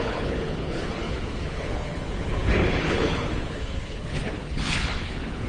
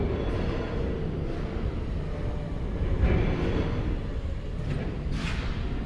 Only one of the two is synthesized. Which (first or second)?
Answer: first